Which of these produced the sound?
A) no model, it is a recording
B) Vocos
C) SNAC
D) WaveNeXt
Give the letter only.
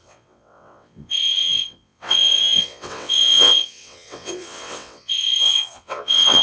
D